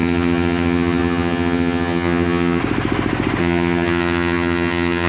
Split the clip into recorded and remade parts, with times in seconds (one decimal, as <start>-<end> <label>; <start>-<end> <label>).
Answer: 0.0-2.6 remade; 2.6-3.4 recorded; 3.4-5.1 remade